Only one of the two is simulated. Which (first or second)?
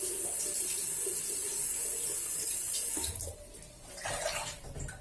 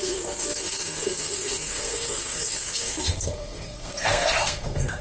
second